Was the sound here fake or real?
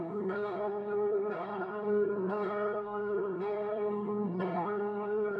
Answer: fake